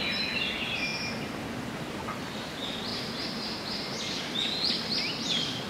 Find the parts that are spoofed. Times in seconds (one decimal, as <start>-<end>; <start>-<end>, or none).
none